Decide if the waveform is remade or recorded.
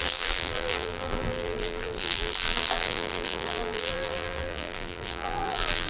remade